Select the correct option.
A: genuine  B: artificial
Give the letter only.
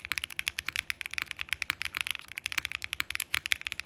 A